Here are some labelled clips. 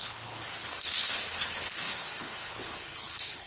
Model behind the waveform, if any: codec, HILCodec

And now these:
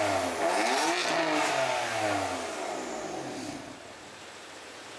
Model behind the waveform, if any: none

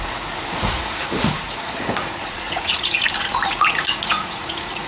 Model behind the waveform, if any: vocoder, Vocos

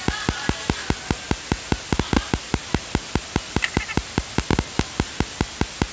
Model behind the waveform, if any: none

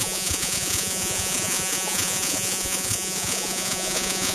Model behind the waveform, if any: vocoder, Vocos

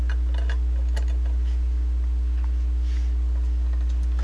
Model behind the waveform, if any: none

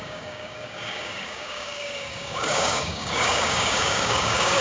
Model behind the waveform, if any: codec, DAC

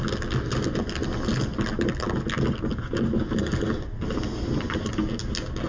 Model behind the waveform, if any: none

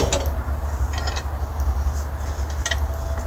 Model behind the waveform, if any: none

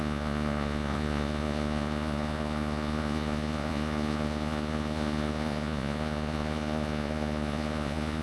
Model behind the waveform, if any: vocoder, Vocos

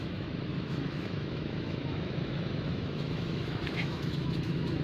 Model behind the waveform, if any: autoencoder, DAC-VAE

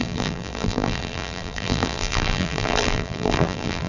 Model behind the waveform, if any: vocoder, BigVGAN v2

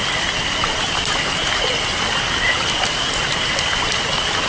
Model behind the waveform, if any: none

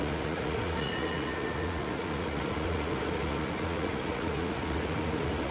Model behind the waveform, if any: vocoder, Vocos